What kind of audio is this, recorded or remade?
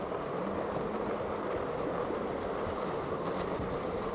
recorded